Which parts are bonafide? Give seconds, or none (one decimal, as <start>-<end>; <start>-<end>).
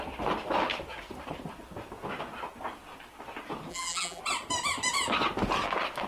0.0-3.7; 4.2-6.1